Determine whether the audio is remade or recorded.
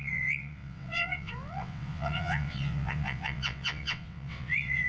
remade